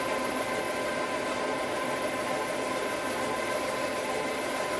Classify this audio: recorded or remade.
recorded